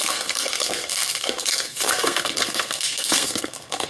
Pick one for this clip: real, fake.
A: fake